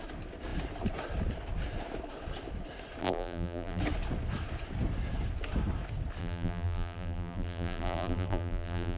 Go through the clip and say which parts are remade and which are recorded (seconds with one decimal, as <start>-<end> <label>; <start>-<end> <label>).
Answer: 0.0-3.0 recorded; 3.0-3.8 remade; 3.8-6.2 recorded; 6.2-9.0 remade